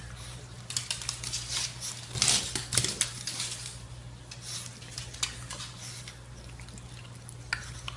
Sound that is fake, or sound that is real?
real